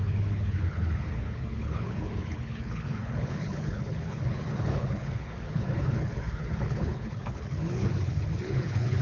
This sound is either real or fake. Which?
fake